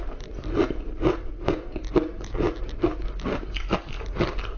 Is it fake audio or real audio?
real